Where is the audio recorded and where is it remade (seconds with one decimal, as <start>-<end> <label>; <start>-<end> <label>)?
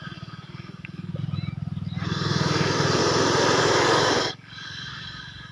0.0-1.1 remade; 1.1-2.1 recorded; 2.1-3.0 remade; 3.0-3.6 recorded; 3.6-5.5 remade